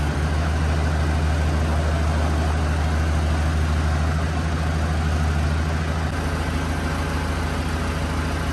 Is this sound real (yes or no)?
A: yes